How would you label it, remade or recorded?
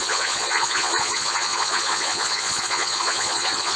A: remade